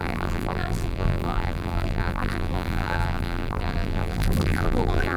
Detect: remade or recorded remade